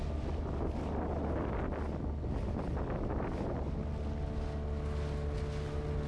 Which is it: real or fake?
real